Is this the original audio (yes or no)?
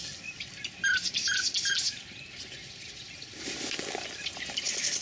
yes